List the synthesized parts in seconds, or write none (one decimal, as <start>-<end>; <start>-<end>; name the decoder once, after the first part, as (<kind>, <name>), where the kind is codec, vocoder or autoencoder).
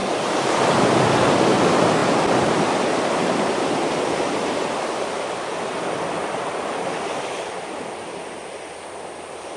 none